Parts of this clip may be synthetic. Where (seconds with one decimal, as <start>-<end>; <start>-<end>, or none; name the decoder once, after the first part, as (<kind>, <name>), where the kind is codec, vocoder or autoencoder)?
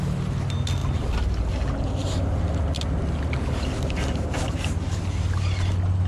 none